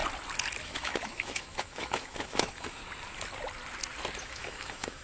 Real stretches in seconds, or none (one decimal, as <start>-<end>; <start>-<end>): 0.0-0.6; 2.8-4.2